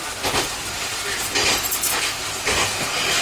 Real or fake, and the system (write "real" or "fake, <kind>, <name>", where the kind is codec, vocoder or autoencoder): real